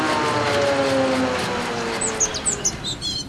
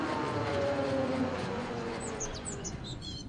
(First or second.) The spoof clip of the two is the second